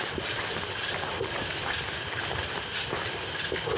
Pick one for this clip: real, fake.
real